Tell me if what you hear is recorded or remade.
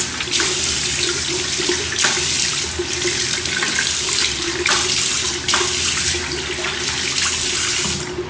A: recorded